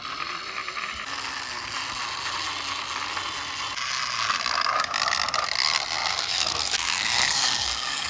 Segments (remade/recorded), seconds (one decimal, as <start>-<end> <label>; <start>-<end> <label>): 0.0-6.0 recorded; 6.0-8.1 remade